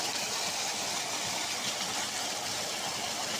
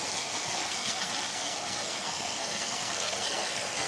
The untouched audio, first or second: first